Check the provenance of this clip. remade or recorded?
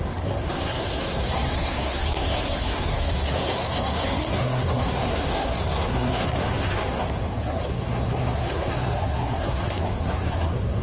remade